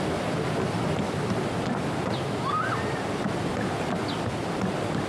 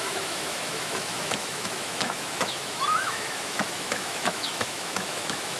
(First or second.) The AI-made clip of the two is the second